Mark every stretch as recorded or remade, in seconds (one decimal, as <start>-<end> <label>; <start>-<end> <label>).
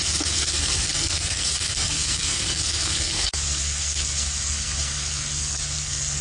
0.0-6.2 remade